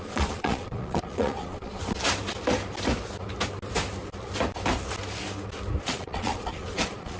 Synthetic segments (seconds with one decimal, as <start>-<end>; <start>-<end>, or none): 0.0-1.8; 5.8-7.2